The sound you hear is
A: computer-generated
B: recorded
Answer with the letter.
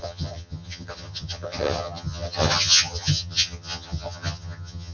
A